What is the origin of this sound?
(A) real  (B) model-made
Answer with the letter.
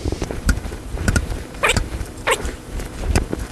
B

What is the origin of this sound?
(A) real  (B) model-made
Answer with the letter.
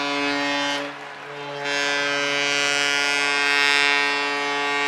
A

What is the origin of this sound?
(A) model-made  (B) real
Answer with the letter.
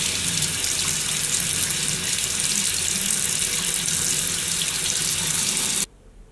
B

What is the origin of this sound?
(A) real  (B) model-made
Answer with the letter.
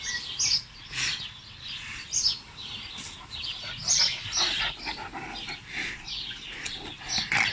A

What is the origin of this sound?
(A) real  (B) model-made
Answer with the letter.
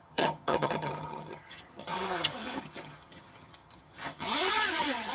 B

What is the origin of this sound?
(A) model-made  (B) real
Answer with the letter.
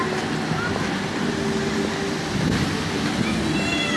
B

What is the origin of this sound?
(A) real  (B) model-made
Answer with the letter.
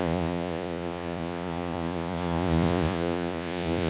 B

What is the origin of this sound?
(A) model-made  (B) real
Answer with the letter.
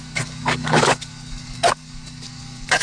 A